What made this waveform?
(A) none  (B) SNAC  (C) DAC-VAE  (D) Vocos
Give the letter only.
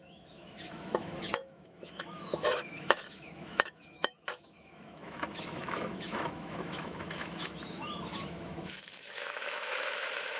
C